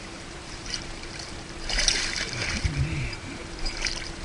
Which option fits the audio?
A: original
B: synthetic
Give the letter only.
B